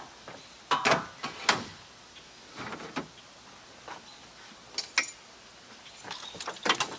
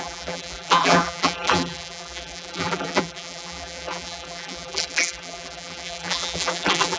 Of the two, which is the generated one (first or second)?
second